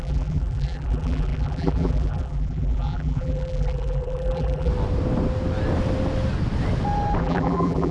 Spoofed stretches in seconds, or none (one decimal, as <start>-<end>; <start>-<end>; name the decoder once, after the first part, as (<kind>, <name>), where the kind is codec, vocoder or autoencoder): 0.0-4.7 (vocoder, BigVGAN v2); 7.2-7.9